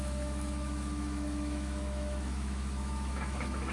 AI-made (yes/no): yes